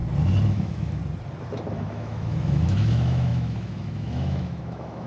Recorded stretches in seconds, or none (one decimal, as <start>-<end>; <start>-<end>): 0.0-0.5; 1.0-1.7